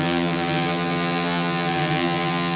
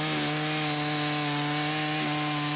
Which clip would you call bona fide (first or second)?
second